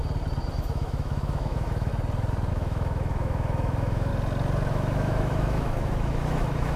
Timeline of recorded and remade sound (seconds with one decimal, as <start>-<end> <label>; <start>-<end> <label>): 0.0-0.5 recorded; 0.5-1.9 remade; 1.9-2.5 recorded; 2.5-4.1 remade; 4.1-4.7 recorded; 4.7-6.8 remade